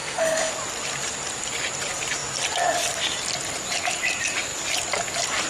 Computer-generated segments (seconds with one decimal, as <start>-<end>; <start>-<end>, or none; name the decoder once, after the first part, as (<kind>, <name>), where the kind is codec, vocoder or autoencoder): 0.0-0.5 (autoencoder, DAC-VAE)